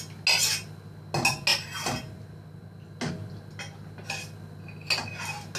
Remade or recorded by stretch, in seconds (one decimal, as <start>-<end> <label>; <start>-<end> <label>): 0.0-5.6 recorded